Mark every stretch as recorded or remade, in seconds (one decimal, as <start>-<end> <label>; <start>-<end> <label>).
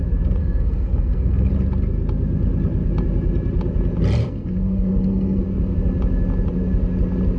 0.0-0.4 recorded; 0.4-1.5 remade; 1.5-4.2 recorded; 4.2-5.4 remade; 5.4-7.4 recorded